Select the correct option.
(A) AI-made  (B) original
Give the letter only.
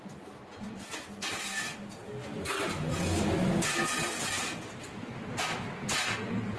B